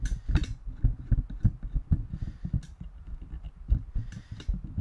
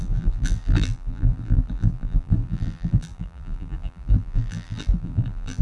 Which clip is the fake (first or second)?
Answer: second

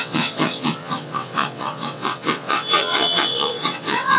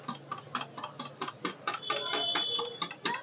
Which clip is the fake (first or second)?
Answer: first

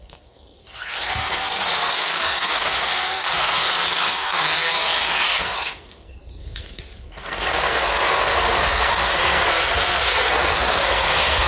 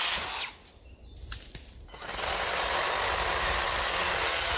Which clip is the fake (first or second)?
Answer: first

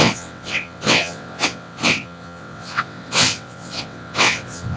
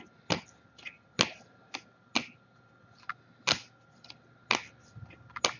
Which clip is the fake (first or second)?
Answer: first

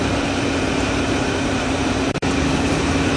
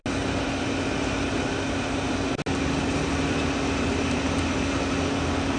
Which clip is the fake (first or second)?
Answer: first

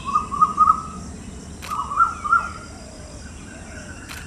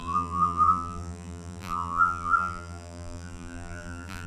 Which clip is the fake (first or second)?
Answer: second